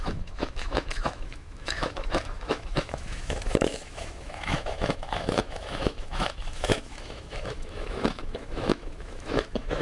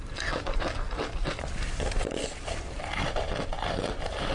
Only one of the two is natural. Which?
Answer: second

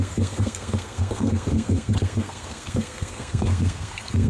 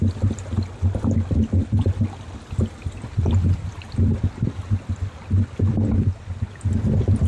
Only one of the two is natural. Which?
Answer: second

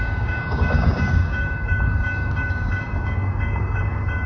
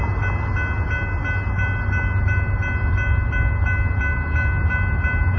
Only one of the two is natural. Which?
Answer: second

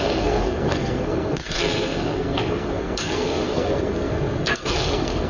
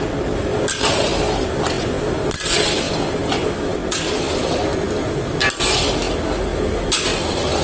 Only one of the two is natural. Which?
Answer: second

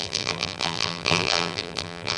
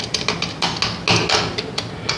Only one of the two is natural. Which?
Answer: second